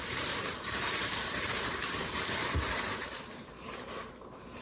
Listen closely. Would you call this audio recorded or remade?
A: remade